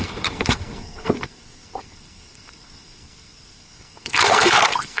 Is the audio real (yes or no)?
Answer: no